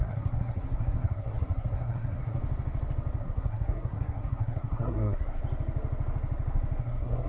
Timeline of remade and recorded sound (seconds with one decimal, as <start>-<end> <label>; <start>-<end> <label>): 0.0-2.4 remade; 2.4-3.2 recorded; 3.2-5.4 remade; 5.4-6.8 recorded; 6.8-7.3 remade